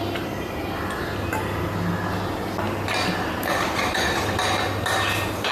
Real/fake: real